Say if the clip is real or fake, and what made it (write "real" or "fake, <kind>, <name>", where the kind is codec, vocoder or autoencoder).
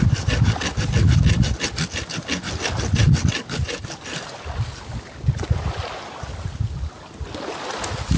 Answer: real